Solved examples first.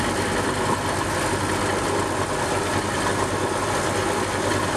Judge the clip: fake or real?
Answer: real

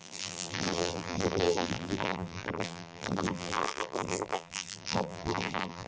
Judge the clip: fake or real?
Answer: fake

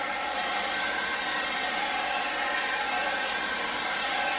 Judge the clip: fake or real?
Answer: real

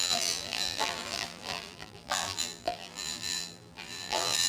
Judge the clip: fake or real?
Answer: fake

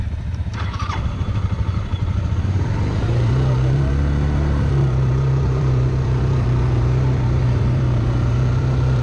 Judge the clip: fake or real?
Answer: fake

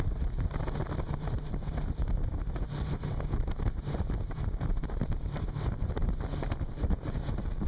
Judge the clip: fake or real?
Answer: fake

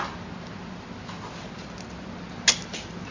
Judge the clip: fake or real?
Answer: real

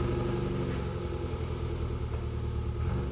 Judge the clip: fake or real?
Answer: real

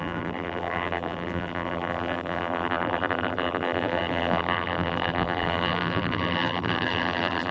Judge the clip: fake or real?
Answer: fake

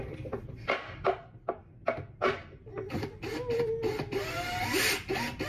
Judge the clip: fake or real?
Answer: real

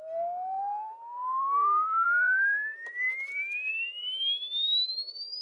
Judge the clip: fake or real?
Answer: fake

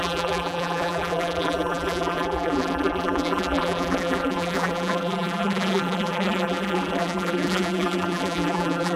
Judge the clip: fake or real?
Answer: fake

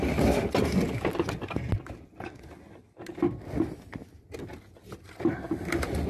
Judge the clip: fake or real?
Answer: real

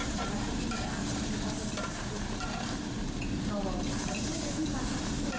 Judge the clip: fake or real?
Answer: fake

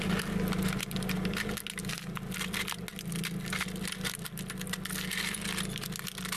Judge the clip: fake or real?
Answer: real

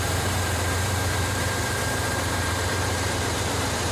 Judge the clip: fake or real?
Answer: fake